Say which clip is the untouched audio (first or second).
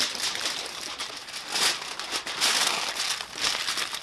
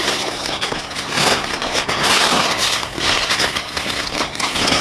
first